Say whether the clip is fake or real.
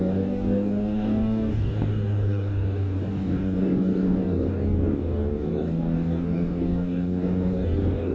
fake